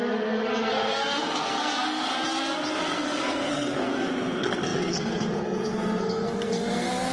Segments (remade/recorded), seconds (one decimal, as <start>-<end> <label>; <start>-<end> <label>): 0.0-2.1 remade; 2.1-2.8 recorded; 2.8-7.1 remade